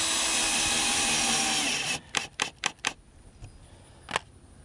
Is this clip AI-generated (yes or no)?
no